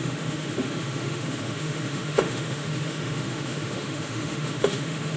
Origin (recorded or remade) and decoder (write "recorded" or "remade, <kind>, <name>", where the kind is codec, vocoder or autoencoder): remade, autoencoder, DAC-VAE